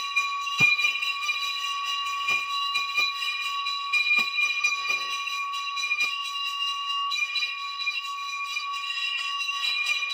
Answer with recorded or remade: remade